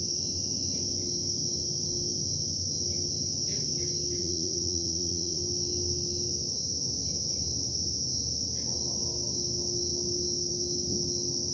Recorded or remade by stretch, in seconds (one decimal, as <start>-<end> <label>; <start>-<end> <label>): 0.0-4.2 recorded; 4.2-5.4 remade; 5.4-11.5 recorded